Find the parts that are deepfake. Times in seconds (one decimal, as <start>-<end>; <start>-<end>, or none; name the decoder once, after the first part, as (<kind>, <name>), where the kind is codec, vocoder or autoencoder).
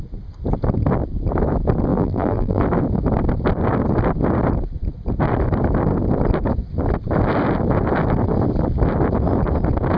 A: 1.9-2.6 (vocoder, BigVGAN v2)